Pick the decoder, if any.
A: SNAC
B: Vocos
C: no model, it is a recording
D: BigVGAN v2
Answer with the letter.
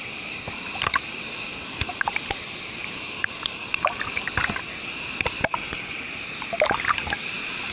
C